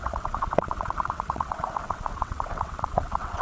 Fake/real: fake